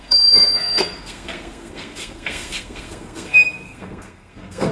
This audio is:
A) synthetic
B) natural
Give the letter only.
A